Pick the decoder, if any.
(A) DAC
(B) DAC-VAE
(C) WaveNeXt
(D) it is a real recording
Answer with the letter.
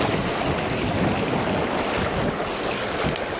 D